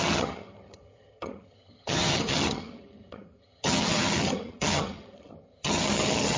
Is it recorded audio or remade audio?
remade